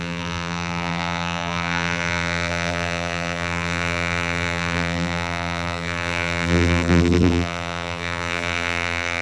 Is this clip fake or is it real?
fake